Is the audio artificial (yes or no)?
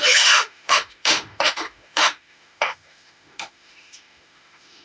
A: yes